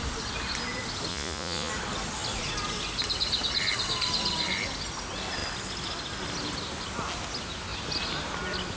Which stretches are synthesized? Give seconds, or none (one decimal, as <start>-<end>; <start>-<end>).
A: 1.1-1.7